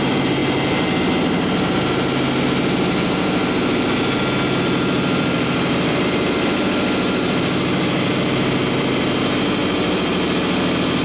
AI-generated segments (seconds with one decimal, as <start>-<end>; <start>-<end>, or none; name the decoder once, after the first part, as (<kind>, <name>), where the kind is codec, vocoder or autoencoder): 0.0-0.4 (vocoder, BigVGAN v2); 4.6-11.0